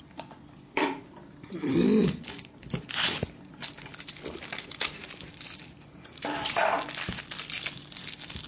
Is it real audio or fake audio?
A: fake